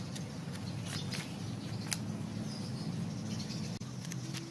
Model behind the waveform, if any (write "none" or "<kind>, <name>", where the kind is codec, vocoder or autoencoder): none